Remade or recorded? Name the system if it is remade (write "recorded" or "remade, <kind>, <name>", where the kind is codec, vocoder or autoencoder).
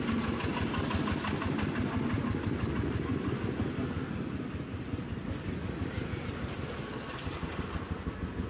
recorded